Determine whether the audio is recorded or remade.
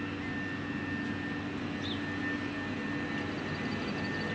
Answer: recorded